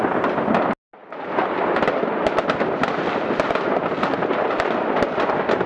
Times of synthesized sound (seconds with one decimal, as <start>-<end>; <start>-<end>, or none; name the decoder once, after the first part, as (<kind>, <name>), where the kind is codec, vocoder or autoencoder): none